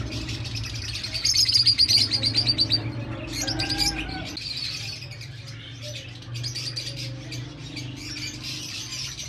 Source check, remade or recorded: recorded